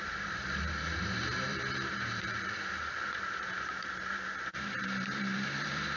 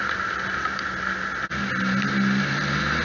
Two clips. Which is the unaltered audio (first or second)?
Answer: second